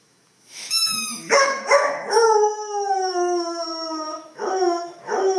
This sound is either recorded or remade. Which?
remade